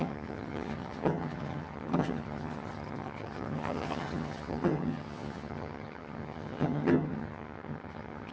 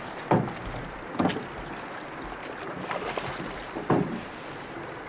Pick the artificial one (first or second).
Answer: first